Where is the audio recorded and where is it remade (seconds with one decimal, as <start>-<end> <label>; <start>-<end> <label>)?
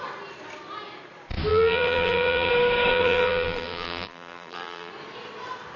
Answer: 0.0-1.5 recorded; 1.5-2.5 remade; 2.5-2.9 recorded; 2.9-4.9 remade; 4.9-5.8 recorded